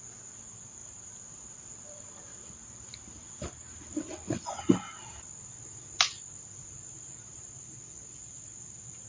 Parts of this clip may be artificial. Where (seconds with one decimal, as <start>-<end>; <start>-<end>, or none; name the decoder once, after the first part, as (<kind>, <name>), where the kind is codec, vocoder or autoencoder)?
none